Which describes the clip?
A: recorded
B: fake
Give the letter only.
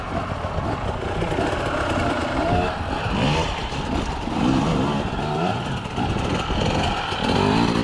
A